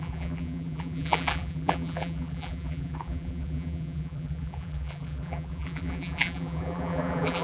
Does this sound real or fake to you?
fake